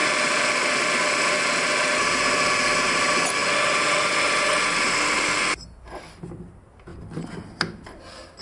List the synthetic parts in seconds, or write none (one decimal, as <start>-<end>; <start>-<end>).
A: none